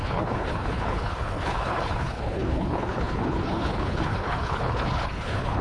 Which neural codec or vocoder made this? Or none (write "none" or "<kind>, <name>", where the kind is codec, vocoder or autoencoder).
codec, HILCodec